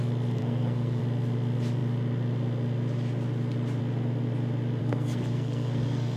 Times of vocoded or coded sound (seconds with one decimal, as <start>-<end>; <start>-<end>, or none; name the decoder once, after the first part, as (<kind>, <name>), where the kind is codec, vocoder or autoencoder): 0.4-1.0 (codec, SNAC); 4.8-6.2